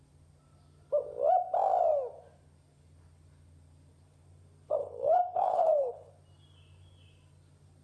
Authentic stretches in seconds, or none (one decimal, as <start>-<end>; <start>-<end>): 0.0-4.8; 6.1-7.8